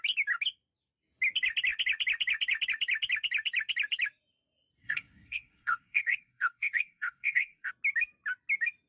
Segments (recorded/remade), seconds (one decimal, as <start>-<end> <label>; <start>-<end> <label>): 0.0-4.8 recorded; 4.8-7.7 remade; 7.7-8.9 recorded